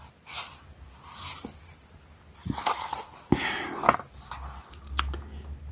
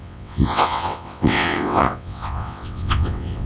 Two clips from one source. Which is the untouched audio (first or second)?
first